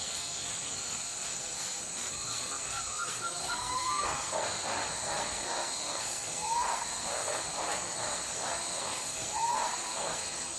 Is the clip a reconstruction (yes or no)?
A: yes